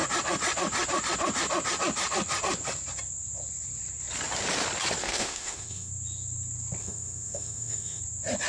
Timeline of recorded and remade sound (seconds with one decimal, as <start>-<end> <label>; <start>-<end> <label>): 0.0-5.0 recorded; 5.0-5.9 remade; 5.9-6.8 recorded; 6.8-8.0 remade; 8.0-8.5 recorded